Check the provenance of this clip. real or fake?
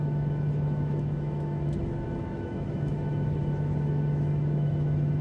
fake